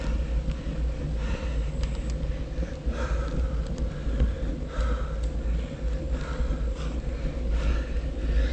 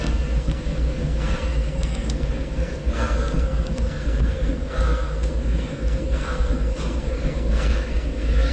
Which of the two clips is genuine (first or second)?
first